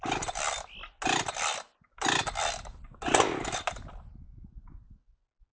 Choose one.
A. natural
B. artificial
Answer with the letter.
A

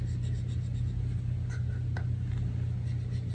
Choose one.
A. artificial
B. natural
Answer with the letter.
B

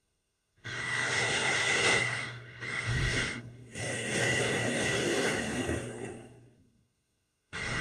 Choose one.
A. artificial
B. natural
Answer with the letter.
A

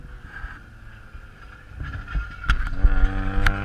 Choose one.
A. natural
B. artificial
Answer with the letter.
A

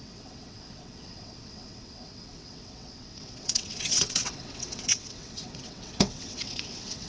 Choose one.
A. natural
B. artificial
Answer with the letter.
B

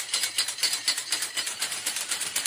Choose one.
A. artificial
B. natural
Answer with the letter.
A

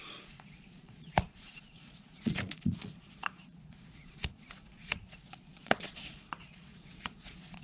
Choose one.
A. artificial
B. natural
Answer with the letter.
A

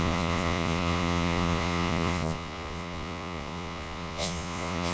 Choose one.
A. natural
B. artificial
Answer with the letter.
B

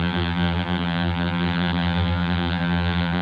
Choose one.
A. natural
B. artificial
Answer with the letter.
B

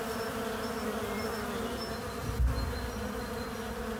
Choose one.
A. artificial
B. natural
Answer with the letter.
B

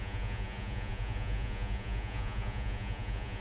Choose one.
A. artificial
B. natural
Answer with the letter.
A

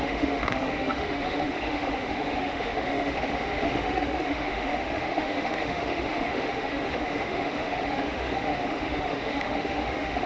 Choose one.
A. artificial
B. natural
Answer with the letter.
A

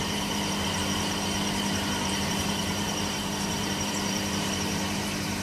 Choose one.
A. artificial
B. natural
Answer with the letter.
A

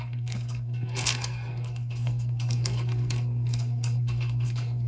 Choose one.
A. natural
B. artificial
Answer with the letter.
B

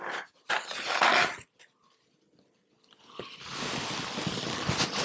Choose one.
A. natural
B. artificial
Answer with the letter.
A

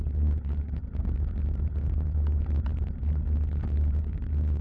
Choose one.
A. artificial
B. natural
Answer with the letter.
B